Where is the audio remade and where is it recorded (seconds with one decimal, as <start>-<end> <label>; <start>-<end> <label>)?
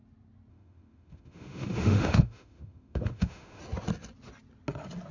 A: 0.0-0.5 recorded; 0.5-3.6 remade; 3.6-5.1 recorded